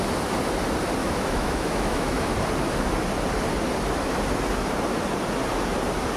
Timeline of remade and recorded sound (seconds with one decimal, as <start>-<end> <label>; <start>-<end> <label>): 0.0-1.0 recorded; 1.0-2.3 remade; 2.3-6.2 recorded

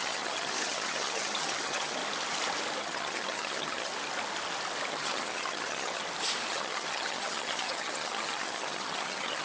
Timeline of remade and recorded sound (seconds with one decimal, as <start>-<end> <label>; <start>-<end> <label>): 0.0-2.0 remade; 2.0-2.8 recorded; 2.8-3.9 remade; 3.9-4.9 recorded; 4.9-6.0 remade; 6.0-6.5 recorded; 6.5-9.4 remade

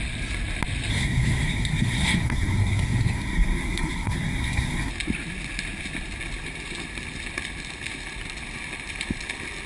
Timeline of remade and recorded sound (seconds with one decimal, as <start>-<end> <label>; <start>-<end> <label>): 0.0-0.9 recorded; 0.9-4.9 remade; 4.9-9.7 recorded

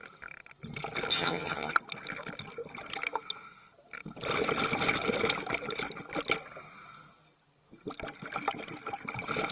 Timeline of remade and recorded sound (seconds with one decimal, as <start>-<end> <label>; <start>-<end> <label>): 0.0-1.1 recorded; 1.1-1.7 remade; 1.7-9.5 recorded